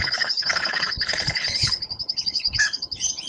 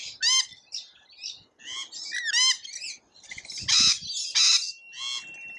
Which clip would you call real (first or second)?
second